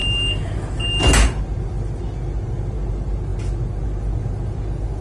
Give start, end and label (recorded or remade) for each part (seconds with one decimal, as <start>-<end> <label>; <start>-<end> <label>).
0.0-5.0 recorded